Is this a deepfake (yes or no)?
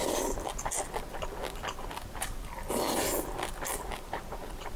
no